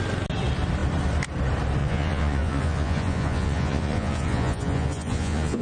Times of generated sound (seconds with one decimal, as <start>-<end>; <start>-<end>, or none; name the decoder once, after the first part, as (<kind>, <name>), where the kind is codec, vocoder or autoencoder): 1.8-5.6 (vocoder, Vocos)